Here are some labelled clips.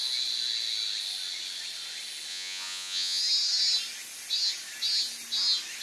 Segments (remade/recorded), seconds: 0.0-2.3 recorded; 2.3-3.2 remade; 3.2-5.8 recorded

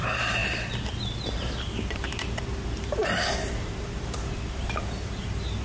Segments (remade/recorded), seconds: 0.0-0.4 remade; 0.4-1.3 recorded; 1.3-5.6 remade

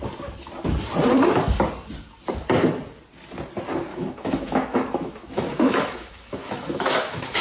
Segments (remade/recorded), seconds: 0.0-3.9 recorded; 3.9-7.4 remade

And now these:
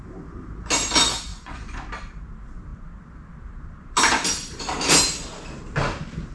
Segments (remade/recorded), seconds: 0.0-1.3 recorded; 1.3-1.8 remade; 1.8-6.3 recorded

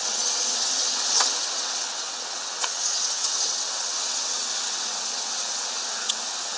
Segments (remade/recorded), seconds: 0.0-6.6 remade

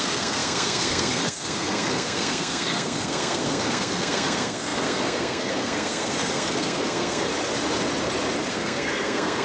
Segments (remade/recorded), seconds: 0.0-7.3 remade; 7.3-8.5 recorded; 8.5-9.4 remade

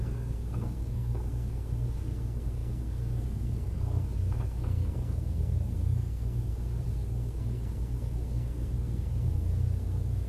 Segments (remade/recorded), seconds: 0.0-10.3 remade

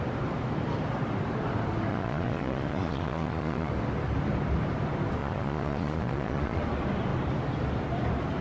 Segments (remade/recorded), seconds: 0.0-1.9 recorded; 1.9-3.7 remade; 3.7-5.2 recorded; 5.2-6.6 remade; 6.6-8.4 recorded